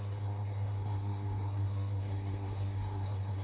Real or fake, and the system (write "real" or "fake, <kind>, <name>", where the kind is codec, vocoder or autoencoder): fake, codec, SNAC